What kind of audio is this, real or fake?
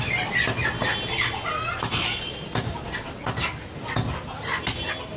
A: real